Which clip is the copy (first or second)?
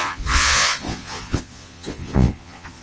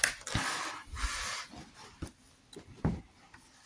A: first